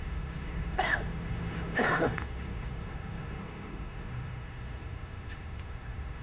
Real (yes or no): no